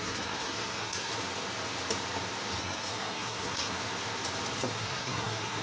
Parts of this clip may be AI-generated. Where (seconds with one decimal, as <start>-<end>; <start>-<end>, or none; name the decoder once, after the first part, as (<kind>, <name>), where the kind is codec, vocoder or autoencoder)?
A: 0.0-1.1 (codec, SNAC); 2.6-3.8; 4.6-5.6